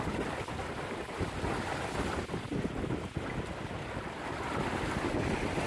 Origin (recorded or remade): recorded